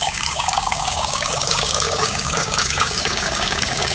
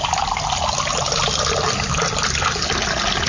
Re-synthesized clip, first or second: first